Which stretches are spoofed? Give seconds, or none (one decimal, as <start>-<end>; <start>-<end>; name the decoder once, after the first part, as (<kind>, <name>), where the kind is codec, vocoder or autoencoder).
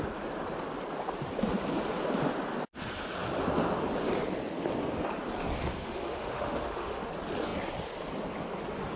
5.7-7.1 (autoencoder, DAC-VAE)